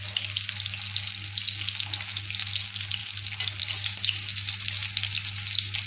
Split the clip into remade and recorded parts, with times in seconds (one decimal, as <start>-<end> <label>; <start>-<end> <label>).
0.0-5.9 recorded